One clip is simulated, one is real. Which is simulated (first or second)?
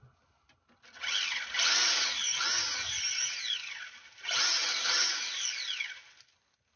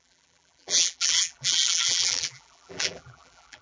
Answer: second